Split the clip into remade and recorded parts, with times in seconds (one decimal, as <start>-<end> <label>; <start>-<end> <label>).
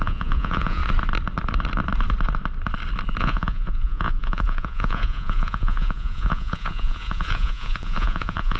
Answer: 0.0-0.8 remade; 0.8-3.2 recorded; 3.2-8.6 remade